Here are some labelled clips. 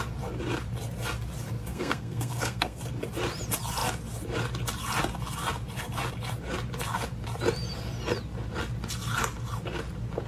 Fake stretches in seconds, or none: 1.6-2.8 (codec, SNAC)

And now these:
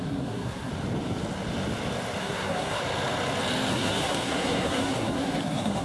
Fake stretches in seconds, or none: 0.0-0.7 (codec, SNAC); 2.2-2.8; 3.7-5.8

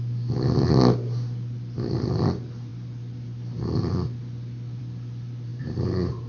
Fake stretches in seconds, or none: 5.5-6.3 (vocoder, BigVGAN v2)

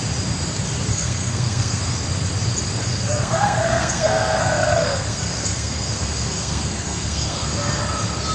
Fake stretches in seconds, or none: 0.9-1.8 (codec, SNAC); 2.8-7.8